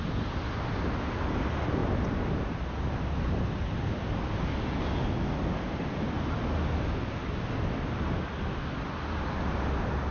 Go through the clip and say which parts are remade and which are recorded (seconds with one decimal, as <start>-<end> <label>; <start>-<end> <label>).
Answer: 0.0-10.1 recorded